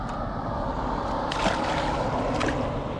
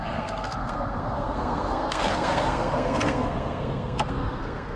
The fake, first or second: second